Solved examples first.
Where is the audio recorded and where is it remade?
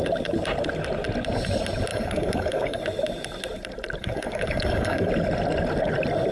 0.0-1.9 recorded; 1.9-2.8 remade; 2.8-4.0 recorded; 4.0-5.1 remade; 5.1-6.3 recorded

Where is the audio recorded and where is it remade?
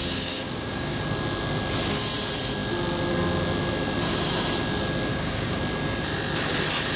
0.0-1.0 remade; 1.0-5.1 recorded; 5.1-5.6 remade; 5.6-7.0 recorded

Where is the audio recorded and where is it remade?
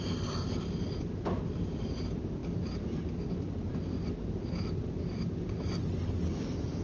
0.0-6.8 recorded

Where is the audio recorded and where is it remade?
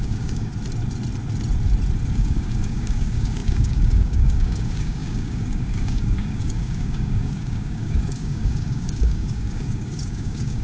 0.0-0.5 remade; 0.5-2.1 recorded; 2.1-10.6 remade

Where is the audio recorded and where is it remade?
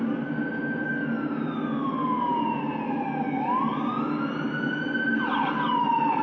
0.0-6.2 recorded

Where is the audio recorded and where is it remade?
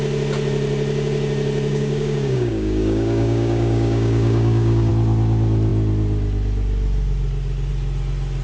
0.0-1.7 recorded; 1.7-4.9 remade; 4.9-8.4 recorded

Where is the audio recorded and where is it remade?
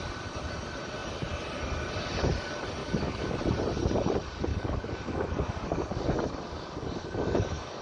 0.0-2.8 recorded; 2.8-3.3 remade; 3.3-4.5 recorded; 4.5-7.8 remade